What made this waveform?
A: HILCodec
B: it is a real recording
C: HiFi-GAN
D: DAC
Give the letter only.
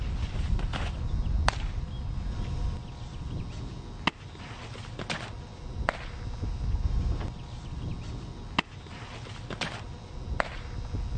B